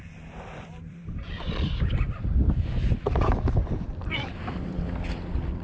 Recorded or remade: remade